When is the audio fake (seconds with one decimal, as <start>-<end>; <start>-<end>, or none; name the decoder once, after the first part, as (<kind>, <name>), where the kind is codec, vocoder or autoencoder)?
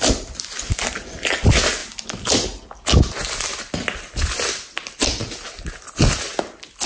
none